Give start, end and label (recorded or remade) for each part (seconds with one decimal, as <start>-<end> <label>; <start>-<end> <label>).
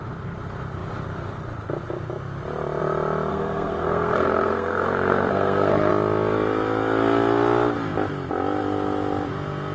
0.0-3.3 recorded; 3.3-5.9 remade; 5.9-9.7 recorded